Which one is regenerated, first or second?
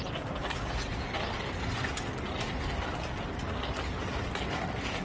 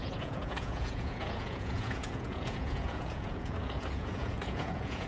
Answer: second